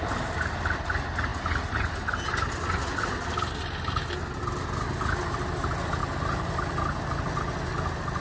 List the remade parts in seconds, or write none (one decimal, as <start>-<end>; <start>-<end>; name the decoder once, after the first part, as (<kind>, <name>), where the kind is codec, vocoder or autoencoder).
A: none